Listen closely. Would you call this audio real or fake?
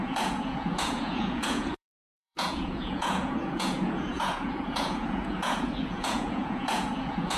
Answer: fake